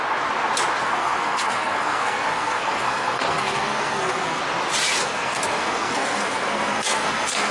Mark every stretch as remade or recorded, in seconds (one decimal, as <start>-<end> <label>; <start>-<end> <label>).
0.0-0.8 recorded; 0.8-4.4 remade; 4.4-5.0 recorded; 5.0-7.5 remade